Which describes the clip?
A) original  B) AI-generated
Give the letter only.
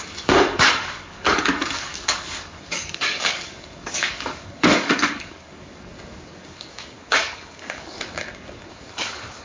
B